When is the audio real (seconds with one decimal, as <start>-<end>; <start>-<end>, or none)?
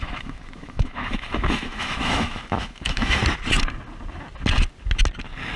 3.2-5.6